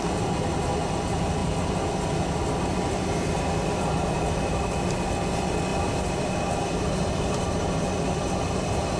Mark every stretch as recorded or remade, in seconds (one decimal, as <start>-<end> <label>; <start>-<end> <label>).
0.0-9.0 recorded